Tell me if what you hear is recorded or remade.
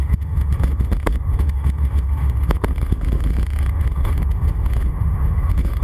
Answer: remade